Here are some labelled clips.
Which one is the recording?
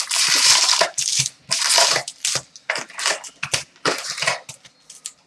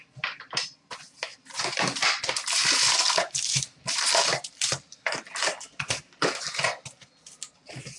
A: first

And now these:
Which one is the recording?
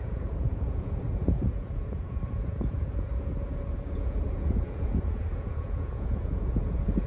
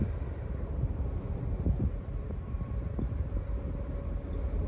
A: second